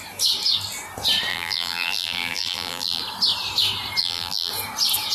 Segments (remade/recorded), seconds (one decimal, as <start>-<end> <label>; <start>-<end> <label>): 0.0-1.3 recorded; 1.3-3.0 remade; 3.0-4.0 recorded; 4.0-4.5 remade; 4.5-5.1 recorded